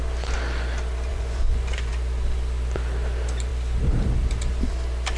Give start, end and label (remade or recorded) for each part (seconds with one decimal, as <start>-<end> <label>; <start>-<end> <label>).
0.0-1.1 recorded; 1.1-1.9 remade; 1.9-5.2 recorded